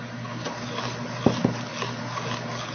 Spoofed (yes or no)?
no